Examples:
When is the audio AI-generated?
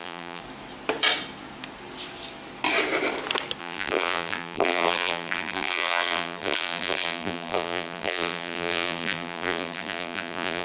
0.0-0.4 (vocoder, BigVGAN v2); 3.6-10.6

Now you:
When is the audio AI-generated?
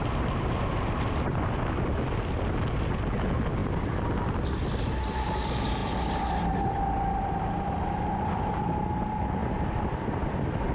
5.8-8.5 (vocoder, BigVGAN v2); 9.4-10.7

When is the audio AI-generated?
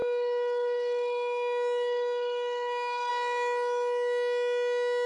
0.0-3.1 (autoencoder, DAC-VAE)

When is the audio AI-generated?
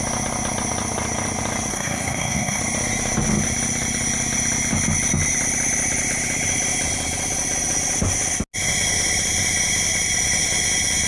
1.7-2.6 (codec, SNAC)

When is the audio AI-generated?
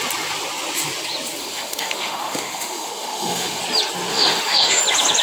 1.4-3.6 (autoencoder, DAC-VAE); 4.1-4.8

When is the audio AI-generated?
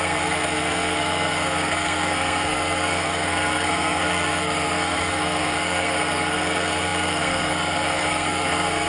0.0-8.9 (codec, SNAC)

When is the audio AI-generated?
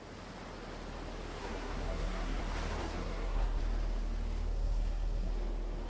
1.4-2.4 (codec, SNAC); 2.8-3.6; 4.5-5.3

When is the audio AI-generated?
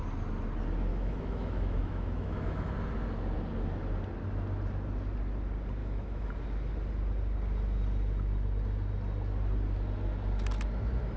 0.9-2.7 (autoencoder, DAC-VAE); 5.8-6.3